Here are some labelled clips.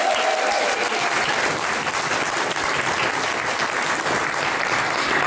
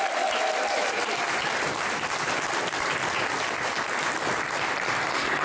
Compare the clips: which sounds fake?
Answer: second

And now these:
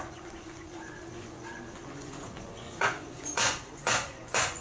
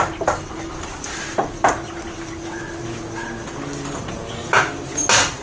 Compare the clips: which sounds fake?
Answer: first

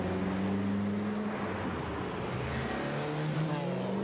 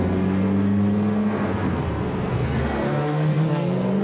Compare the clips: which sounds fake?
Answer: second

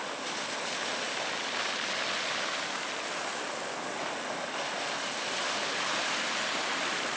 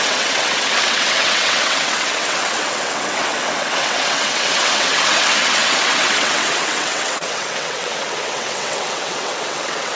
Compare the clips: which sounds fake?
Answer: second